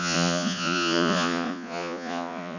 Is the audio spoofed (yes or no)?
yes